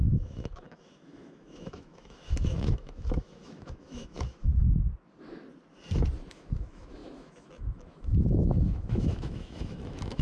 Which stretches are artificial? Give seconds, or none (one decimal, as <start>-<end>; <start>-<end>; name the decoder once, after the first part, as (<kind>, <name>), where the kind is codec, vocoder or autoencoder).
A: 0.0-4.5 (autoencoder, DAC-VAE); 6.3-10.2